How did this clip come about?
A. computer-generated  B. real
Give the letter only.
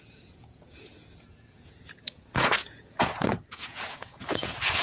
A